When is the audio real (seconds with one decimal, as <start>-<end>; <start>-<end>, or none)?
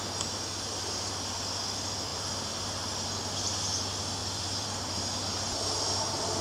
0.0-4.2; 4.9-6.4